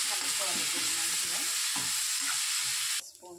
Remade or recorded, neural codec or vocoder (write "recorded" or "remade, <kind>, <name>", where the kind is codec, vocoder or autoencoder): recorded